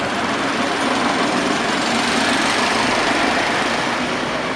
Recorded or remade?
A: recorded